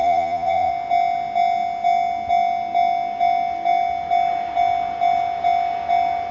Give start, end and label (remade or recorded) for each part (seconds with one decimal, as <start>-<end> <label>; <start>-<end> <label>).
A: 0.0-0.7 remade; 0.7-6.3 recorded